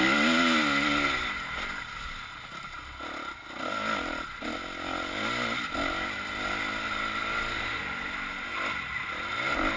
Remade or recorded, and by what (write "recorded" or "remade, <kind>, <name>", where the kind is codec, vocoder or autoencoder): recorded